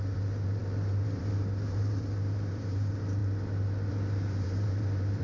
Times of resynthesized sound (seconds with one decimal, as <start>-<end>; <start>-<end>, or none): 0.0-3.2; 3.9-5.2